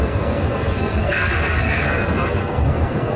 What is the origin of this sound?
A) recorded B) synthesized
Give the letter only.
B